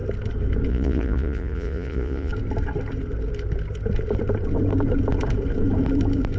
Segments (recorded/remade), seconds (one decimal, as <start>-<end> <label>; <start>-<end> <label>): 0.0-0.7 recorded; 0.7-2.3 remade; 2.3-6.4 recorded